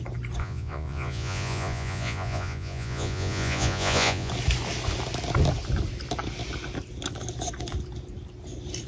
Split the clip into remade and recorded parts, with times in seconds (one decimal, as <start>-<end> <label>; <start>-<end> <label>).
0.0-0.4 recorded; 0.4-4.3 remade; 4.3-8.9 recorded